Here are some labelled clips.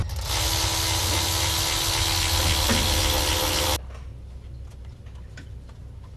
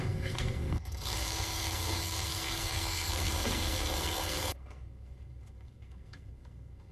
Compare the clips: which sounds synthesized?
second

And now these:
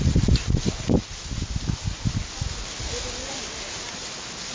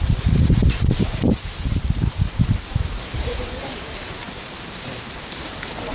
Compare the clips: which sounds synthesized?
second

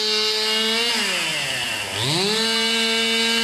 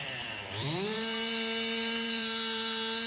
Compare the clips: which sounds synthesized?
second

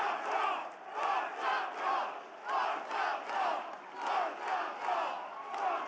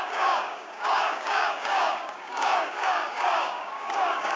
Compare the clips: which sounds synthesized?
second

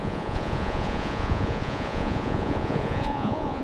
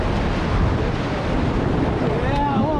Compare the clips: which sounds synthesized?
first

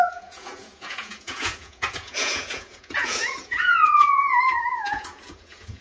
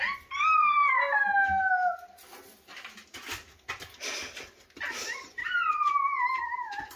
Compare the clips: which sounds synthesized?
first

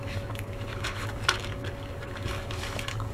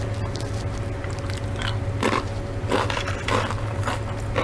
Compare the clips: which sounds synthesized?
first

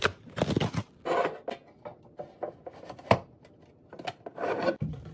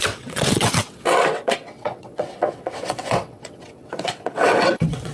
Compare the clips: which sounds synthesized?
second